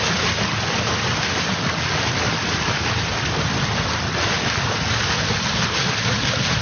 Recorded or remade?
recorded